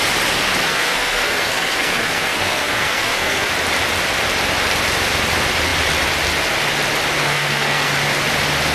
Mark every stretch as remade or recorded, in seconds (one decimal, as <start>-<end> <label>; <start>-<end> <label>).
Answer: 0.0-0.6 recorded; 0.6-3.5 remade; 3.5-7.2 recorded; 7.2-7.9 remade; 7.9-8.7 recorded